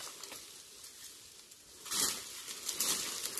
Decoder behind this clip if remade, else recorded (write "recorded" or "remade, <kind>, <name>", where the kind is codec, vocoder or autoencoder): recorded